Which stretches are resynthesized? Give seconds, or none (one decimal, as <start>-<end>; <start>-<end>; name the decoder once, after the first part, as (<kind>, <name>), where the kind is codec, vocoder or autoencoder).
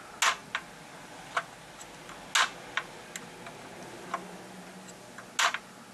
none